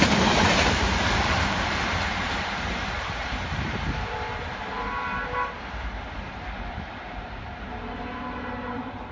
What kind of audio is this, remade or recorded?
remade